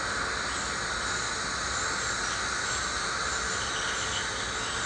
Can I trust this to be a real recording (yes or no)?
yes